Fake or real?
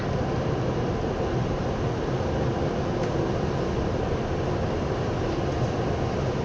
real